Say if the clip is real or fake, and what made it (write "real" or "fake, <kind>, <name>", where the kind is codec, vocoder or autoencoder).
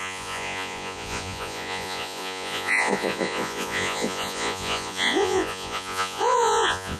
fake, vocoder, Vocos